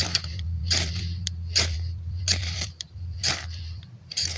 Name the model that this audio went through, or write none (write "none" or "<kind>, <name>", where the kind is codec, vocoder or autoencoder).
vocoder, BigVGAN v2